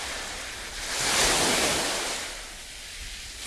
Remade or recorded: recorded